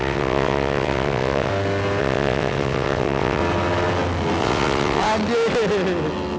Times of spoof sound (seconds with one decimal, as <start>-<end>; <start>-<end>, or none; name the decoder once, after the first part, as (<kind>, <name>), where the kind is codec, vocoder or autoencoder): 0.0-1.5 (vocoder, WaveNeXt); 2.0-3.4; 4.4-5.0